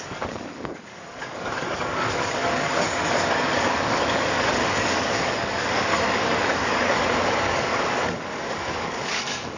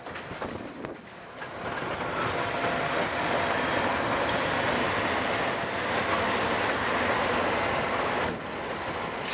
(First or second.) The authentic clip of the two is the second